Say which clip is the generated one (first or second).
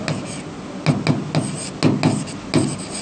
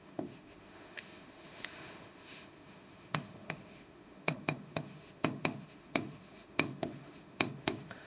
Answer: second